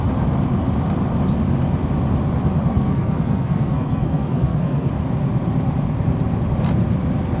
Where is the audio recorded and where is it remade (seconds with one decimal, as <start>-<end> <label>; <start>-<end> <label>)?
0.0-2.7 recorded; 2.7-4.9 remade; 4.9-7.4 recorded